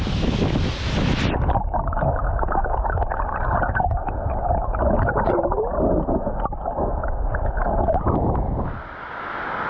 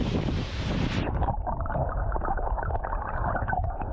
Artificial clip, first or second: second